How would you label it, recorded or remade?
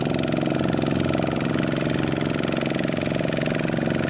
recorded